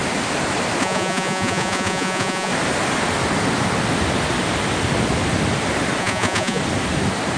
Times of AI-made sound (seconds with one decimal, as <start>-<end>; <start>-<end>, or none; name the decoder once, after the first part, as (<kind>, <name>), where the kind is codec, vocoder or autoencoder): 0.8-2.5 (vocoder, Vocos); 6.0-6.6